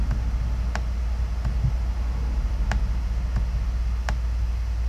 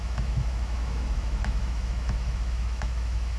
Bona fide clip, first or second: first